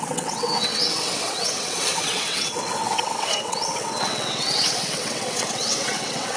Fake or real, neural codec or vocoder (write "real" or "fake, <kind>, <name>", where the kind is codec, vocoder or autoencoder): fake, vocoder, WaveNeXt